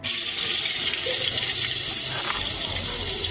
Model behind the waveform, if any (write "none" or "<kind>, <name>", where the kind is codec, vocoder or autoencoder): none